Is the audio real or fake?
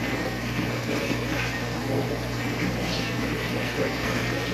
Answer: fake